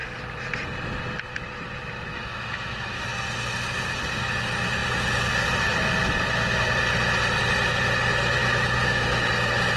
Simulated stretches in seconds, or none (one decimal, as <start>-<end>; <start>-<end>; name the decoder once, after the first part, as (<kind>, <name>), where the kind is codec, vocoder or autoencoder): 2.1-3.0 (autoencoder, DAC-VAE); 8.4-9.3